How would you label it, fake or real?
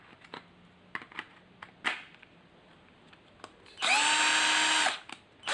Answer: real